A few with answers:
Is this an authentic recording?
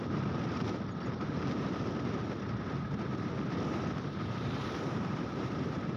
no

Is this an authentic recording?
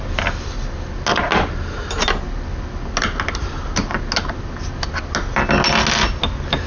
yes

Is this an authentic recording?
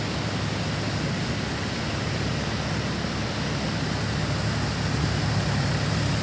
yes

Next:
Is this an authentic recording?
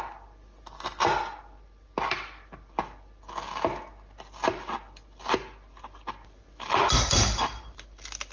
yes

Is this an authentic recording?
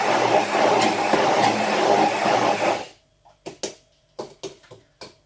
yes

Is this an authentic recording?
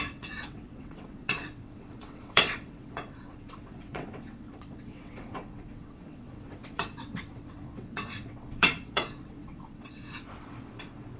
no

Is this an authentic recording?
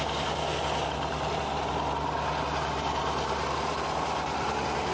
yes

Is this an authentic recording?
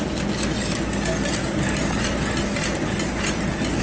yes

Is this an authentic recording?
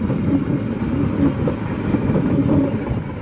yes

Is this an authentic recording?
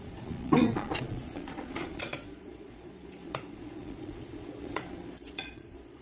no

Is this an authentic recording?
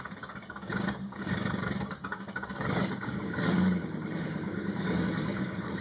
no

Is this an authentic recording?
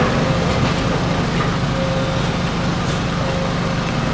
yes